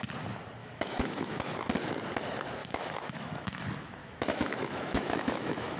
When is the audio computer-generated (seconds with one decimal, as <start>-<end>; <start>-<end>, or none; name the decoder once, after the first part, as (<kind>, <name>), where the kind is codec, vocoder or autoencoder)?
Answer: 0.6-1.5 (autoencoder, DAC-VAE); 2.6-3.6; 4.0-5.8

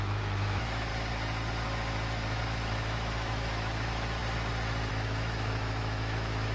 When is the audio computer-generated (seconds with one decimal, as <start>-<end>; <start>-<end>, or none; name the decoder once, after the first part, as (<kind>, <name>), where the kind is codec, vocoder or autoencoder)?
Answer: 0.0-0.9 (autoencoder, DAC-VAE); 2.4-4.2; 4.9-6.5

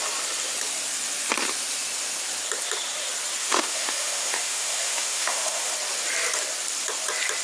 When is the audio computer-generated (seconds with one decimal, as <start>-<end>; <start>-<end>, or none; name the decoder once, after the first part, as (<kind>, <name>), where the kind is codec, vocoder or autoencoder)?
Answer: 3.4-5.7 (autoencoder, DAC-VAE)